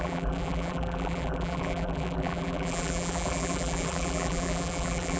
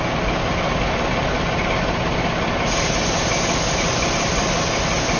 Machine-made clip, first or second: first